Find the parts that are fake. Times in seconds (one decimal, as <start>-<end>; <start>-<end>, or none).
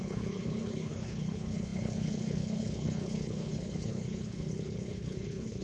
0.0-5.6